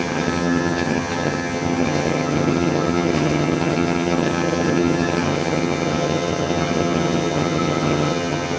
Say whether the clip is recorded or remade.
remade